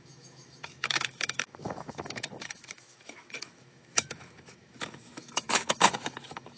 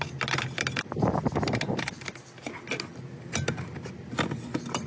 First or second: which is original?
second